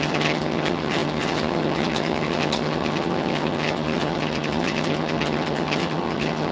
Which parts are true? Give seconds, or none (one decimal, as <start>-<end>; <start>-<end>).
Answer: none